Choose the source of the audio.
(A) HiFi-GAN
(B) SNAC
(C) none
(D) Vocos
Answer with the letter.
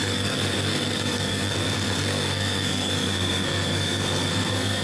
B